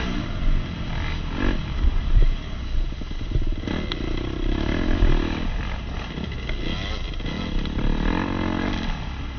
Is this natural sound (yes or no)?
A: yes